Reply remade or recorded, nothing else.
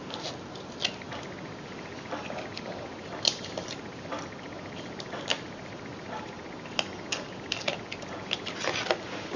recorded